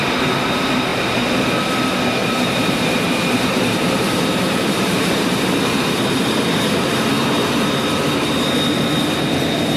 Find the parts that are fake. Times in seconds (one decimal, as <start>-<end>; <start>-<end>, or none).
2.2-7.1